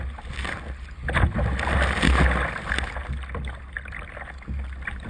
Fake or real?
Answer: real